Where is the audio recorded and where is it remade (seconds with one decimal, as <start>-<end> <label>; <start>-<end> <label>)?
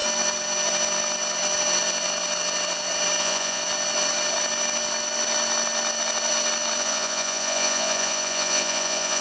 0.0-3.2 recorded; 3.2-3.6 remade; 3.6-6.8 recorded; 6.8-9.2 remade